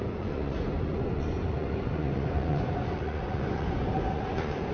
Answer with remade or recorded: remade